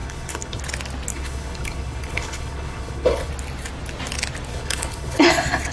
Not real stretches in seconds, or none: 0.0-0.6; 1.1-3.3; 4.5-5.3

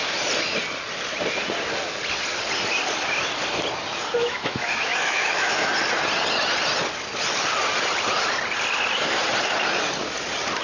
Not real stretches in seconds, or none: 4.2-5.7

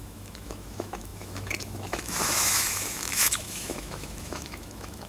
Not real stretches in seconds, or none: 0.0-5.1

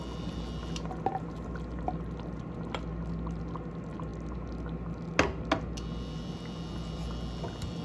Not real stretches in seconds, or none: none